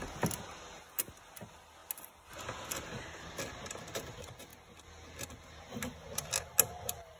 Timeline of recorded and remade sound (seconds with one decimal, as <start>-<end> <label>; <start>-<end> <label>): 0.0-7.2 recorded

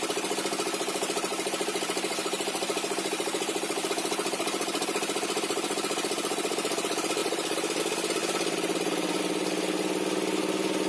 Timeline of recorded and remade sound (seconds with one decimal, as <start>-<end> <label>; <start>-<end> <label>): 0.0-1.3 recorded; 1.3-3.9 remade; 3.9-7.2 recorded; 7.2-7.8 remade; 7.8-8.2 recorded; 8.2-9.2 remade; 9.2-10.9 recorded

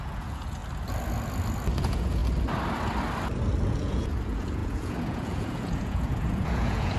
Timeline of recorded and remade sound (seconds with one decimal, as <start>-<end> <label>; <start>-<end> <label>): 0.0-0.6 remade; 0.6-1.8 recorded; 1.8-2.2 remade; 2.2-3.6 recorded; 3.6-7.0 remade

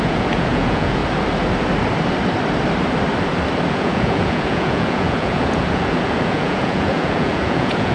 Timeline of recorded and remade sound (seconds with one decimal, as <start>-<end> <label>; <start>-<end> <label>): 0.0-1.0 remade; 1.0-3.7 recorded; 3.7-7.9 remade

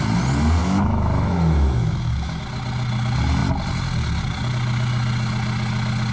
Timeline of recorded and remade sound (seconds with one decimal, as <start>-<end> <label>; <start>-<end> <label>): 0.0-0.6 recorded; 0.6-2.4 remade; 2.4-6.1 recorded

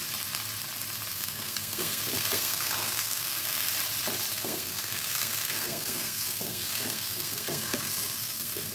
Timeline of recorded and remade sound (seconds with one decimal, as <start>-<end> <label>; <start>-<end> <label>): 0.0-1.1 recorded; 1.1-3.7 remade; 3.7-4.3 recorded; 4.3-8.7 remade